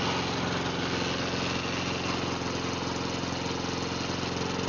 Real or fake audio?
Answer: real